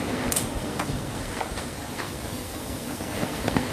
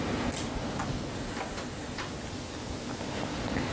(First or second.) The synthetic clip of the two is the first